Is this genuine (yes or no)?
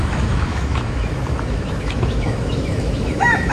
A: no